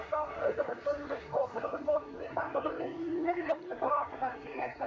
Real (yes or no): no